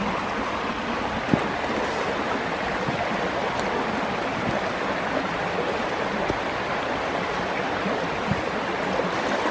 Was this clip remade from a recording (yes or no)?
no